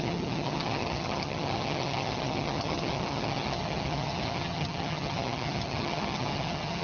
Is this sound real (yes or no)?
no